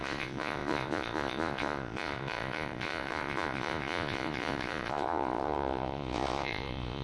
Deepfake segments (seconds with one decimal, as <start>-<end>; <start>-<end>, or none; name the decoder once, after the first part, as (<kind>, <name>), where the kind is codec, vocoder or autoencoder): 0.0-7.0 (vocoder, Vocos)